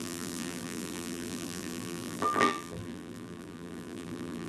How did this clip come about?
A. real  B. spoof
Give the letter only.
B